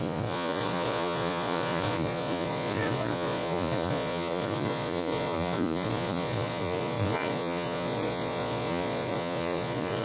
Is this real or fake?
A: fake